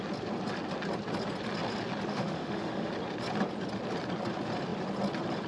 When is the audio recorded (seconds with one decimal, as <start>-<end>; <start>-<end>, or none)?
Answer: 0.0-2.1; 2.9-5.5